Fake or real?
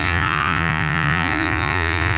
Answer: fake